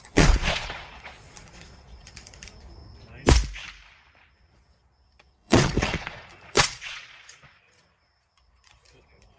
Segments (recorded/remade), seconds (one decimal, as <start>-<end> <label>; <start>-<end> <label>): 0.0-2.8 remade; 2.8-4.3 recorded; 4.3-9.4 remade